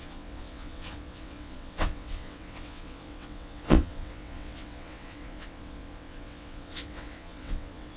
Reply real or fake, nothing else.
fake